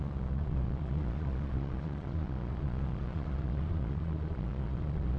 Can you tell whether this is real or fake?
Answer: fake